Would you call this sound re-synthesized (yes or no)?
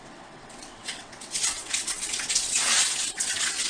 yes